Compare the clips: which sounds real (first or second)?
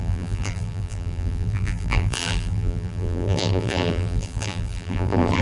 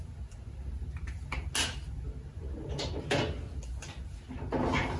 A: second